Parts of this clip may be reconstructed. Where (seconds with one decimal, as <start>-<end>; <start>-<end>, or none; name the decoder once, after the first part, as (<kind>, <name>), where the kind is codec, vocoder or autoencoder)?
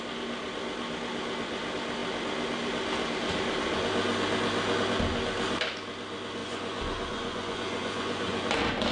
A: 6.4-8.5 (vocoder, Vocos)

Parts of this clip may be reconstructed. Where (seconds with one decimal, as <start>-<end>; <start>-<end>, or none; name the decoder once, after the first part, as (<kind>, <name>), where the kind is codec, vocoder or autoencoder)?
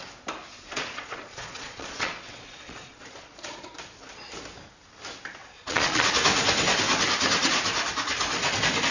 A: 0.5-3.6 (vocoder, Vocos); 5.4-6.1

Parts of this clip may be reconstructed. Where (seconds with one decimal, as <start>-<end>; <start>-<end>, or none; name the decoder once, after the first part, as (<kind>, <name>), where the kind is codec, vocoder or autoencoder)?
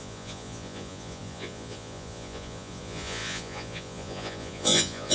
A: 0.0-5.1 (vocoder, Vocos)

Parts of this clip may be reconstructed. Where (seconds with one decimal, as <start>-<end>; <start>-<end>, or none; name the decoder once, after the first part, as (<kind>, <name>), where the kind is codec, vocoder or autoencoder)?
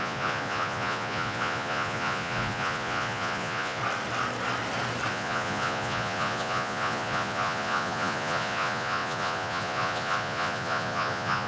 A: 0.0-3.8 (vocoder, Vocos); 5.1-11.5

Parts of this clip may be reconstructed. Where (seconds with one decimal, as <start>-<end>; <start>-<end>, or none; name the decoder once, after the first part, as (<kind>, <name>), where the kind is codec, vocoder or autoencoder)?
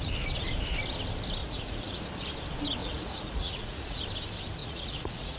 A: 1.4-2.0 (vocoder, Vocos); 2.8-4.0; 4.6-5.4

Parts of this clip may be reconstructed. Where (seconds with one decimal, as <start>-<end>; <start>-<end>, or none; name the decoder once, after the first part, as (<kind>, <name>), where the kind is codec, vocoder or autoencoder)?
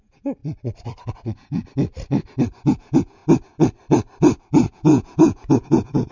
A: 0.0-0.4 (vocoder, Vocos); 1.1-1.6; 2.8-3.2; 4.7-6.1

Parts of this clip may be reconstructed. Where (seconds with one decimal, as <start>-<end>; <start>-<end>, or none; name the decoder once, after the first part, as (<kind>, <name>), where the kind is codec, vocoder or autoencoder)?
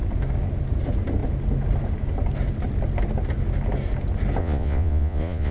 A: 4.4-5.5 (vocoder, Vocos)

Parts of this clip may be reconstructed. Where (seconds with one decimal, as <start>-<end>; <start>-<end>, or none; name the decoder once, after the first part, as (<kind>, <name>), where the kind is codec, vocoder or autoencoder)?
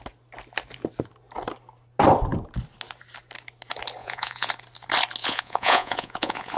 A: 4.0-4.5 (vocoder, Vocos); 5.2-6.6